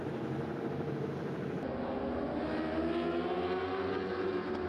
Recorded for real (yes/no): yes